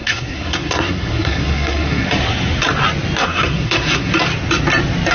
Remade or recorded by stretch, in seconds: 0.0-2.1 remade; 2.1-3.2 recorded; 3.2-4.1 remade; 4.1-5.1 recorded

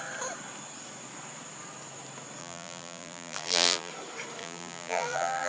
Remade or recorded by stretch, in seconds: 0.0-2.4 recorded; 2.4-3.9 remade; 3.9-4.4 recorded; 4.4-5.5 remade

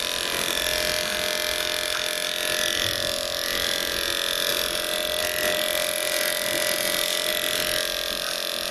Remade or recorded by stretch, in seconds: 0.0-8.7 recorded

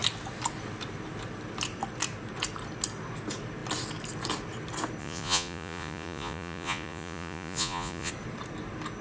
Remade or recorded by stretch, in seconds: 0.0-5.0 recorded; 5.0-8.1 remade; 8.1-9.0 recorded

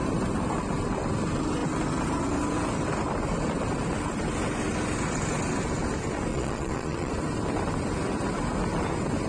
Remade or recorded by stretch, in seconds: 0.0-6.3 recorded; 6.3-7.1 remade; 7.1-9.3 recorded